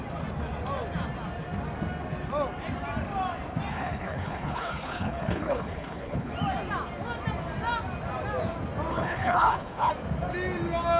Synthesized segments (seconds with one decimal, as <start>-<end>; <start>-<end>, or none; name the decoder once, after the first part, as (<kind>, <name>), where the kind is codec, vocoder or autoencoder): 3.7-6.3 (codec, HILCodec); 8.9-9.9